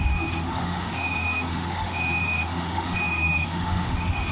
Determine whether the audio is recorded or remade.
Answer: remade